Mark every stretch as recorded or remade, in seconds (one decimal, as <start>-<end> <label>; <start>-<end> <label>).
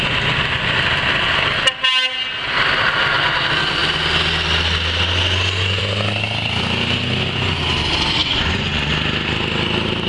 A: 0.0-8.2 recorded; 8.2-8.9 remade; 8.9-10.1 recorded